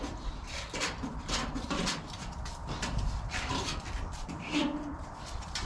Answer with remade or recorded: remade